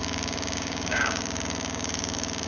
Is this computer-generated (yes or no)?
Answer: yes